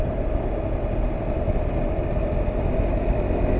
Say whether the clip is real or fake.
real